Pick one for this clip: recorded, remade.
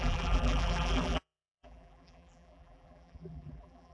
remade